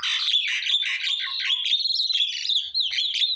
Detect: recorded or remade recorded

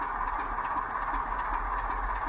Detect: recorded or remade recorded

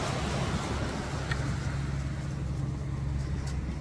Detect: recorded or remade recorded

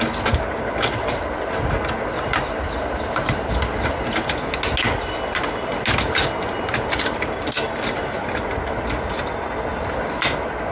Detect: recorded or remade recorded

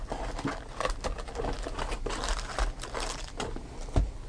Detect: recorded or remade recorded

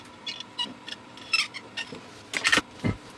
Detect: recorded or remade recorded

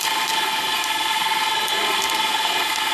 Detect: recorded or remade remade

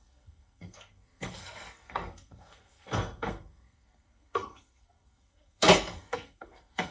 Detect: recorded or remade remade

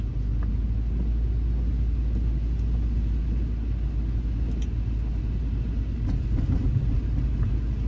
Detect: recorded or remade recorded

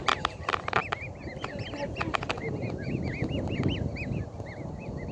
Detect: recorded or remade recorded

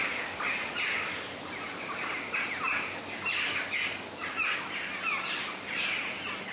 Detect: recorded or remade recorded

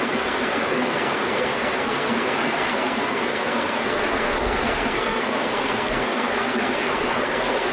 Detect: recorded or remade remade